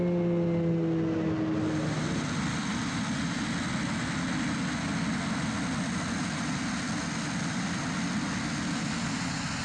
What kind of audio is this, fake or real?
real